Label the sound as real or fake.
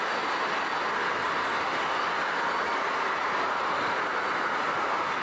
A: real